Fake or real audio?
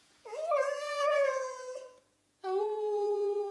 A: fake